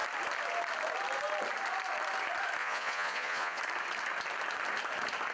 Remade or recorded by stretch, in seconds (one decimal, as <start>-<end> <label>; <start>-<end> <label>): 0.0-2.6 recorded; 2.6-3.6 remade; 3.6-5.3 recorded